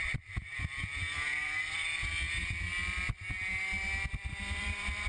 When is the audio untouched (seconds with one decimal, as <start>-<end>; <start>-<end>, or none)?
2.0-4.1